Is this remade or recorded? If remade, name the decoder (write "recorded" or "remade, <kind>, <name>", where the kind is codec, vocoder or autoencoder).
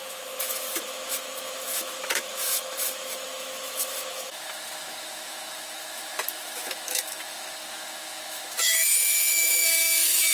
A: remade, autoencoder, DAC-VAE